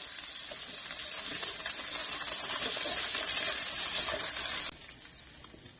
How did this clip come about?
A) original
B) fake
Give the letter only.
A